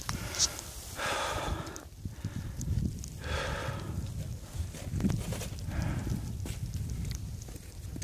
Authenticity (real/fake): real